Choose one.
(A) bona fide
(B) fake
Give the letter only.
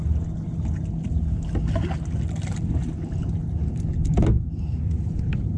A